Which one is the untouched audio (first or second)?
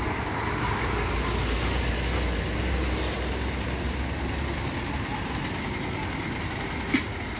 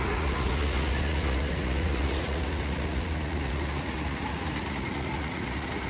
first